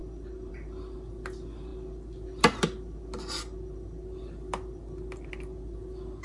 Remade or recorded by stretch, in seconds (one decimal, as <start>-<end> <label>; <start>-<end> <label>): 0.0-6.2 recorded